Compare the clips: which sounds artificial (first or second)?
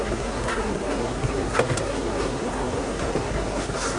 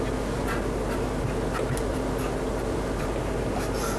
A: first